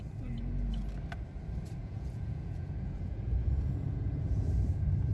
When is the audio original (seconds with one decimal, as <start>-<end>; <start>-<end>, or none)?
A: 0.0-1.8; 4.5-5.1